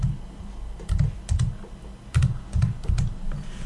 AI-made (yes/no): no